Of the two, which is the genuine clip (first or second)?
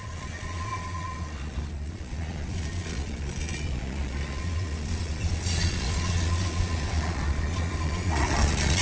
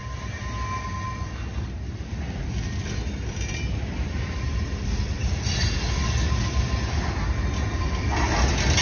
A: second